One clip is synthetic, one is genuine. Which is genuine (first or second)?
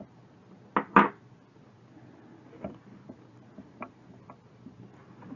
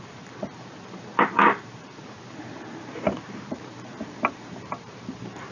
first